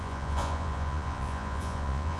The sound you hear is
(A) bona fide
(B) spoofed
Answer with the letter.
B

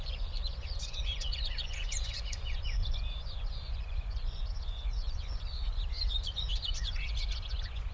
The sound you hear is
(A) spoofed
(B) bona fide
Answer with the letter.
A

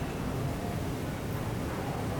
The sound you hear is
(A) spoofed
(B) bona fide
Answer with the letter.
B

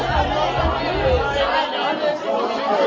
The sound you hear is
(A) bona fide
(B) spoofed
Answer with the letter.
A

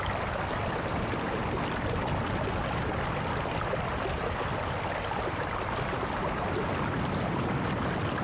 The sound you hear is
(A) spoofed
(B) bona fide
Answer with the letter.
B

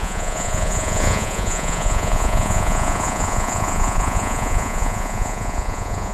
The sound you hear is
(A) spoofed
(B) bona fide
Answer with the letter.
A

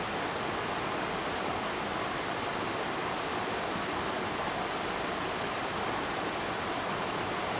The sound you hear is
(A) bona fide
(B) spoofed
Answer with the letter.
A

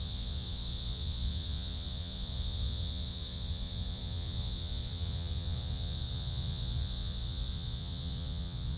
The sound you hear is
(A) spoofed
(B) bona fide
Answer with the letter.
A